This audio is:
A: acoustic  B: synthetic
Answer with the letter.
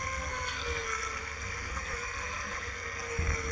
B